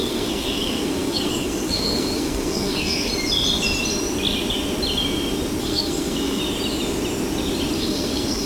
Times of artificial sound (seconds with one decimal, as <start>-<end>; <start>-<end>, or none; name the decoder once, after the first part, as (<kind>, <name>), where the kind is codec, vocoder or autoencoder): 0.0-3.1 (codec, SNAC); 5.6-6.4; 7.8-8.5